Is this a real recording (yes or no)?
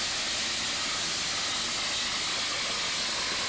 yes